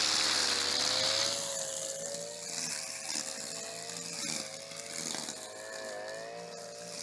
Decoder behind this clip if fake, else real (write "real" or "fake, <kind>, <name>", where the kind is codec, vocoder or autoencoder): real